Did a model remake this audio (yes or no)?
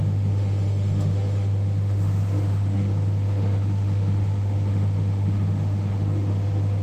yes